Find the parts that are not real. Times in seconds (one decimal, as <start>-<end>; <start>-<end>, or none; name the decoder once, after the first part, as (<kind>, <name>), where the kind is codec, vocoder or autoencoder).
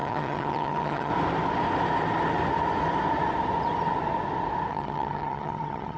0.0-1.1 (vocoder, HiFi-GAN); 4.7-6.0